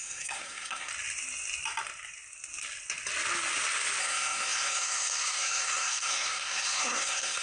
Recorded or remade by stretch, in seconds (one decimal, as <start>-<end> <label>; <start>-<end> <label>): 0.0-0.9 remade; 0.9-4.0 recorded; 4.0-7.4 remade